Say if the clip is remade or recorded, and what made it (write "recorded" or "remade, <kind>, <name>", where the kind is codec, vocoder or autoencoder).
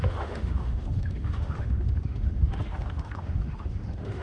remade, autoencoder, DAC-VAE